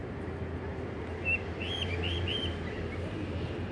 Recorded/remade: recorded